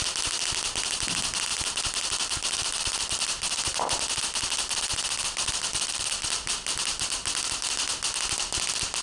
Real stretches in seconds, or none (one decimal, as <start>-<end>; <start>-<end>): 0.0-1.5; 6.3-9.0